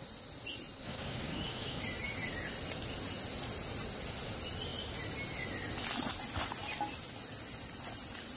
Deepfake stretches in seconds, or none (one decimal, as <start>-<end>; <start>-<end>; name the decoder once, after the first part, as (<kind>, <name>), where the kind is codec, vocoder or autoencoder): 0.8-1.8 (codec, DAC)

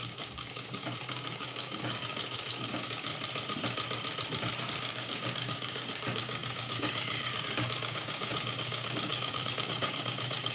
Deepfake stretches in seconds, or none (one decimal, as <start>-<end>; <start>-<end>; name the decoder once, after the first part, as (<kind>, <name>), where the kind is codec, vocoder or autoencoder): 0.0-3.1 (codec, DAC); 4.6-10.5

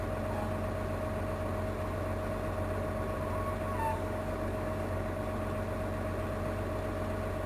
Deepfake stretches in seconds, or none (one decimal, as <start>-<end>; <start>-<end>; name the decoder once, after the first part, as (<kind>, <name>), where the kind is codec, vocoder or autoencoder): 3.9-5.2 (codec, DAC)

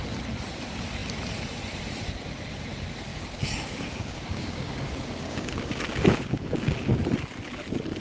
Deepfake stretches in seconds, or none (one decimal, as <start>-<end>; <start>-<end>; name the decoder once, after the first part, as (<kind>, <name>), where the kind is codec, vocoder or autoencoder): 3.1-7.0 (codec, DAC)

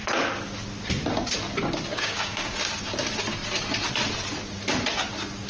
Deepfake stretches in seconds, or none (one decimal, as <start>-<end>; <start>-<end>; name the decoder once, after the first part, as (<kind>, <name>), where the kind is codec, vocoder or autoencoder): 1.9-2.6 (codec, DAC)